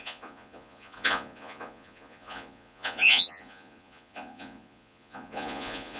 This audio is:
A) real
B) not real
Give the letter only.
B